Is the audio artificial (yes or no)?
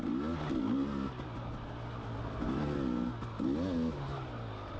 no